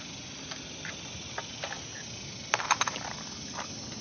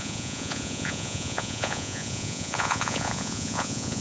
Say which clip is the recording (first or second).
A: first